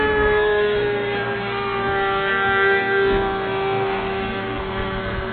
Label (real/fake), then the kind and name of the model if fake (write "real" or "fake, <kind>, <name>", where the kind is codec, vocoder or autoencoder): fake, codec, SNAC